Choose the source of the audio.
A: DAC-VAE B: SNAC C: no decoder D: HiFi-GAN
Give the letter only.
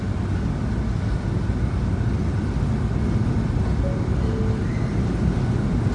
C